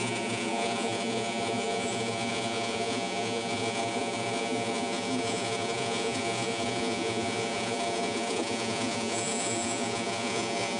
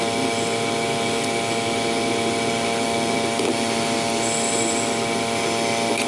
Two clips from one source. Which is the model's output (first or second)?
first